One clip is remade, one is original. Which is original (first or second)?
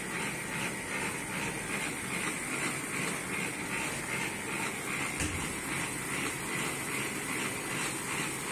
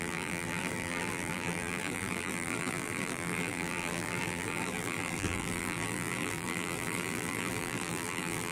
first